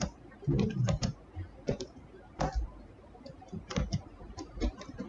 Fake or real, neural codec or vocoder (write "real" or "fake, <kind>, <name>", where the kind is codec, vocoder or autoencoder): fake, vocoder, BigVGAN v2